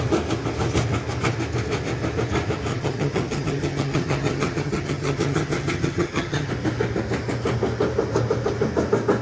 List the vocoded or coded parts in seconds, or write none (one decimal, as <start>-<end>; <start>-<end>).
2.7-6.5